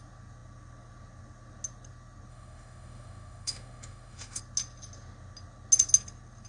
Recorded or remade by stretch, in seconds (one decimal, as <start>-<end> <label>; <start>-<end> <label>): 0.0-2.3 recorded; 2.3-4.4 remade; 4.4-6.5 recorded